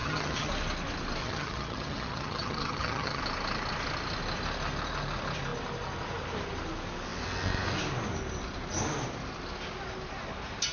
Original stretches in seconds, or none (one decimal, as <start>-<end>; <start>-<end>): 0.5-1.2; 3.2-10.7